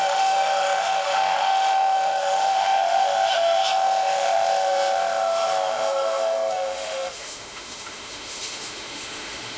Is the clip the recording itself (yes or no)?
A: no